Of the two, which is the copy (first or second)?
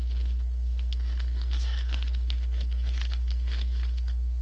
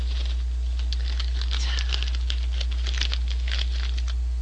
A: first